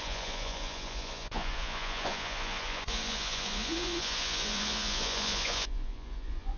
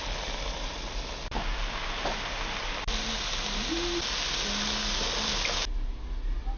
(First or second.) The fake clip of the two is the first